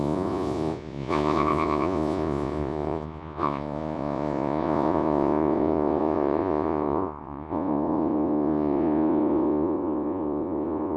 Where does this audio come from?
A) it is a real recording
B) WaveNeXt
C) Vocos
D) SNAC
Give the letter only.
C